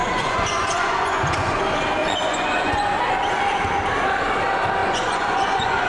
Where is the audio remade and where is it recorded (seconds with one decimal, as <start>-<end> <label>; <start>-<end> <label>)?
0.0-1.6 remade; 1.6-2.0 recorded; 2.0-3.0 remade; 3.0-4.8 recorded; 4.8-5.9 remade